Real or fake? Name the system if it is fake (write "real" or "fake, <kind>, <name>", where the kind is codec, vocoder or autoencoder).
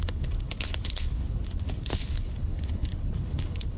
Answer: fake, codec, HILCodec